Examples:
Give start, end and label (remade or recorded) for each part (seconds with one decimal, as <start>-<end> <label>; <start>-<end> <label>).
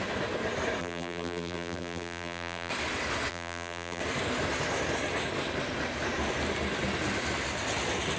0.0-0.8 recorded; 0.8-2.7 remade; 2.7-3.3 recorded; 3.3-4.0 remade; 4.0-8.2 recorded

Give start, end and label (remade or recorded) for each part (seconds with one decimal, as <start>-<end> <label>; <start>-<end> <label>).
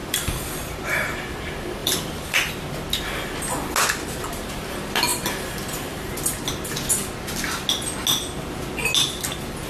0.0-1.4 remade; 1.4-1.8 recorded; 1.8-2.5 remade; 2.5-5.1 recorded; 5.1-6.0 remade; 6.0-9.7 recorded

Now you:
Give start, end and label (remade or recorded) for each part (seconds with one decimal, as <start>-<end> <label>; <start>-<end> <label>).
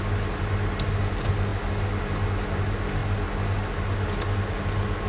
0.0-1.5 remade; 1.5-2.6 recorded; 2.6-5.1 remade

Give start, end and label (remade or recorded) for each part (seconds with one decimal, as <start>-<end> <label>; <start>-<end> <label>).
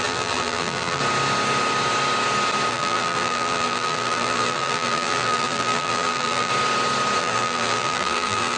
0.0-1.0 remade; 1.0-2.7 recorded; 2.7-6.5 remade; 6.5-7.2 recorded; 7.2-8.6 remade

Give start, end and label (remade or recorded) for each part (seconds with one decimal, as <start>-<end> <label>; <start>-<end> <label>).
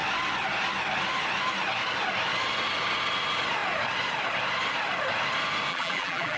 0.0-5.7 recorded; 5.7-6.4 remade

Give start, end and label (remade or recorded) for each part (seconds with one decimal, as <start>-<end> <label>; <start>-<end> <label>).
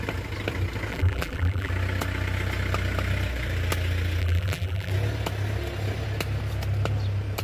0.0-0.9 recorded; 0.9-1.7 remade; 1.7-4.2 recorded; 4.2-4.9 remade; 4.9-7.4 recorded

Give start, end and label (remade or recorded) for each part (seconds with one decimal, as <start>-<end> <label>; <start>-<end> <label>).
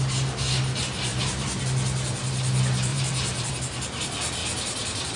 0.0-1.1 recorded; 1.1-1.6 remade; 1.6-2.9 recorded; 2.9-3.5 remade; 3.5-4.4 recorded; 4.4-5.2 remade